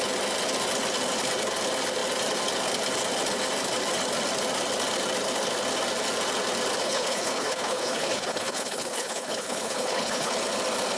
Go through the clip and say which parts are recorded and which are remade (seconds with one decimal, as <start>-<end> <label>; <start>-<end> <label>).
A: 0.0-6.8 recorded; 6.8-10.3 remade; 10.3-11.0 recorded